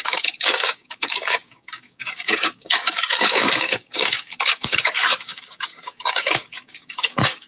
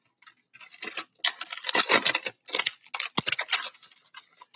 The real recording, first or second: second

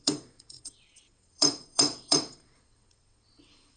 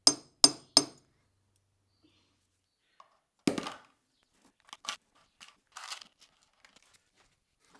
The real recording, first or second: second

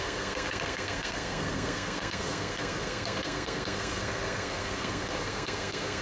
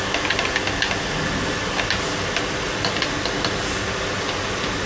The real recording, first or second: second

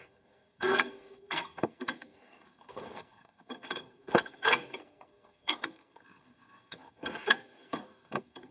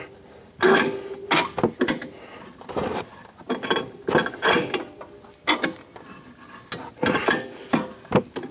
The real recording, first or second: second